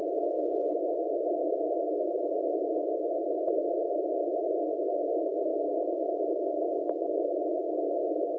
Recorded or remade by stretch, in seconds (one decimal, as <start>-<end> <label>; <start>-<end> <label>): 0.0-5.5 recorded; 5.5-7.3 remade; 7.3-8.4 recorded